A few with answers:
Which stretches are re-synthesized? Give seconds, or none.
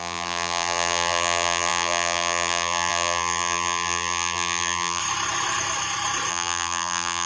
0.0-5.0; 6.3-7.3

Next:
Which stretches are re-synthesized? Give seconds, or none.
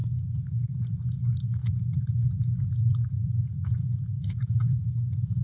1.2-1.6; 2.4-3.0; 4.2-5.4